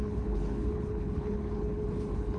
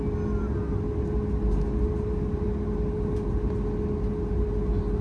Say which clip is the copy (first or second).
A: first